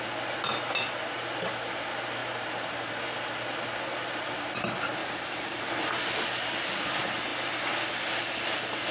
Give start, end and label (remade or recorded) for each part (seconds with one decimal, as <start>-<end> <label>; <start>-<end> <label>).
0.0-2.2 recorded; 2.2-2.9 remade; 2.9-5.0 recorded; 5.0-5.6 remade; 5.6-8.9 recorded